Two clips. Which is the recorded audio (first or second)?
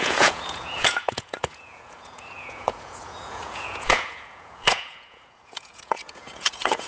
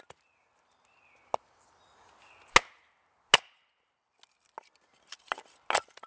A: second